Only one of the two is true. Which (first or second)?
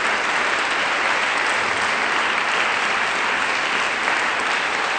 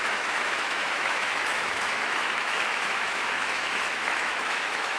first